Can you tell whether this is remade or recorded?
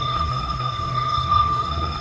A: remade